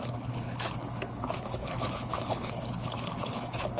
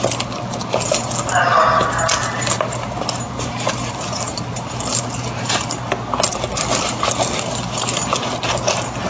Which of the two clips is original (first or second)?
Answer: second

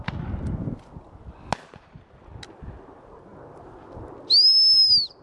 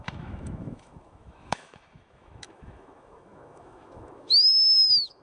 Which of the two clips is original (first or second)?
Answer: first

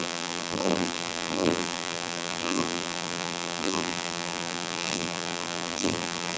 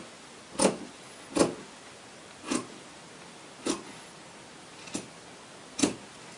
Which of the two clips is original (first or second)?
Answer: second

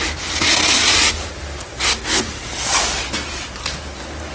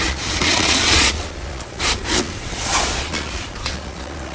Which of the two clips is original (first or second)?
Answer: first